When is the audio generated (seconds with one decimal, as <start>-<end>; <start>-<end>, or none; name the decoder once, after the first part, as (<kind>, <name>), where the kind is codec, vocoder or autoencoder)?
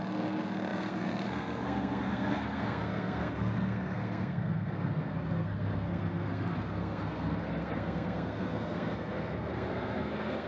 0.0-10.5 (codec, SNAC)